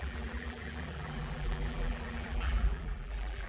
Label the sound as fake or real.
fake